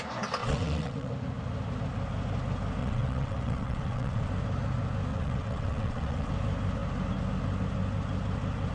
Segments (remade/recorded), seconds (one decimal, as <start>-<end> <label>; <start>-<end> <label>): 0.0-0.4 recorded; 0.4-1.1 remade; 1.1-2.8 recorded; 2.8-4.3 remade; 4.3-5.1 recorded; 5.1-6.3 remade; 6.3-8.7 recorded